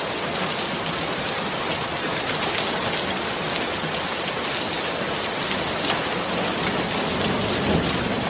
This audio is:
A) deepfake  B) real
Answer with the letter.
B